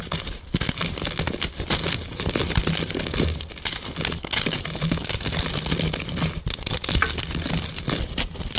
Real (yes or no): yes